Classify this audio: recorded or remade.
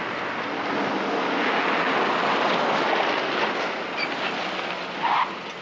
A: recorded